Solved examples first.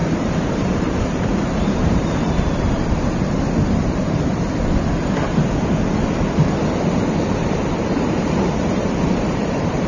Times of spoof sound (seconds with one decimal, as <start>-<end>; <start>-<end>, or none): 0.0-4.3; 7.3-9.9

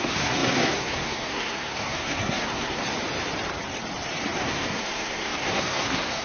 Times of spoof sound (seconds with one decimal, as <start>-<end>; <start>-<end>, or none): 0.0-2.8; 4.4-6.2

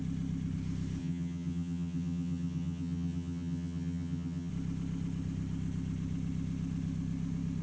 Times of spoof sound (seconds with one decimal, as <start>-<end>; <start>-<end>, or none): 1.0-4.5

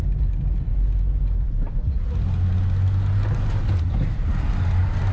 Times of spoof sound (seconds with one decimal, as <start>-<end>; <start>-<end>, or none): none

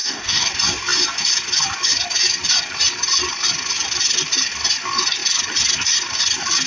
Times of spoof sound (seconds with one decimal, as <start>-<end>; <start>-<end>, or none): 0.0-0.5

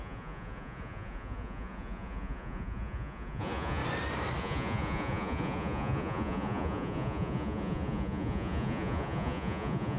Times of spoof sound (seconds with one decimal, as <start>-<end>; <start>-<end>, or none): 0.0-3.8; 4.4-10.0

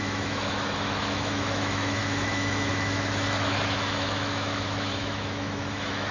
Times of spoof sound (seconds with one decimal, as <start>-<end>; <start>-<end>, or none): 0.0-6.1